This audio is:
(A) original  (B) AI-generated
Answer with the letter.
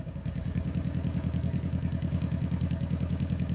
B